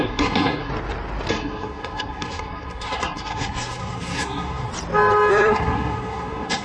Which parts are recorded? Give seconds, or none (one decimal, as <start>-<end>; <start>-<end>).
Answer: 0.7-1.3; 4.7-5.3

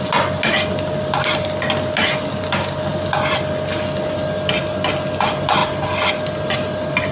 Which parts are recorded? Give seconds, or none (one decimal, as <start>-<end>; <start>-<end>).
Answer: 0.0-7.1

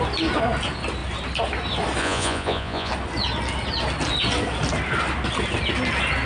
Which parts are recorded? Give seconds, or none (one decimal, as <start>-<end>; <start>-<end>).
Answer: 0.0-2.0; 2.9-6.3